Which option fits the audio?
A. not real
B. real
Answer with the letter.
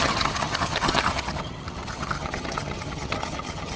A